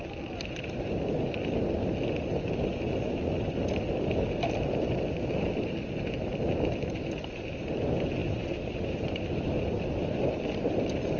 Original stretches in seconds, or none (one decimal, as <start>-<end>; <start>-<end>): 0.0-8.2; 9.8-11.2